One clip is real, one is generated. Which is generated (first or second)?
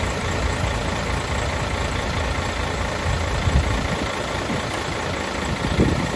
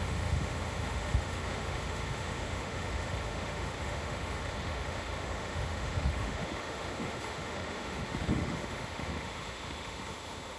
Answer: second